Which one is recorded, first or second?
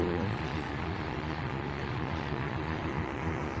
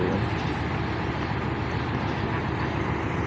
second